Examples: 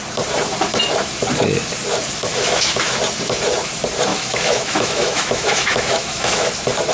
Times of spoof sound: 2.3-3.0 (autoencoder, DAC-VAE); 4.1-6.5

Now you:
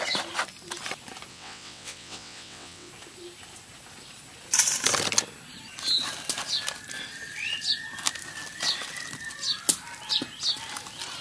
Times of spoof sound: 1.3-2.9 (vocoder, WaveNeXt)

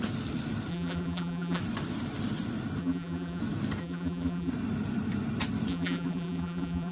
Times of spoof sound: 0.7-1.6 (vocoder, BigVGAN v2); 2.8-3.4; 3.8-4.5; 5.7-6.9

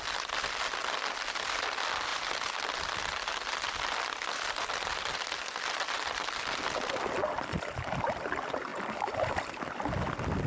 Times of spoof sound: 4.9-6.4 (vocoder, BigVGAN v2); 8.7-9.3

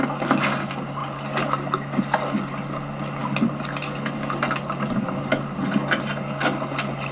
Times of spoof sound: none

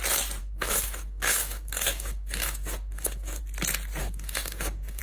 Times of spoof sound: 0.4-3.4 (codec, DAC); 4.0-5.0